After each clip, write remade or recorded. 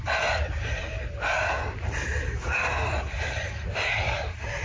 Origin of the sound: recorded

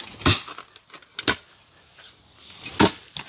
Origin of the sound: recorded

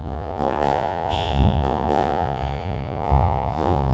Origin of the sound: remade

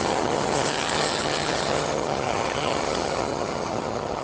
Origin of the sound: remade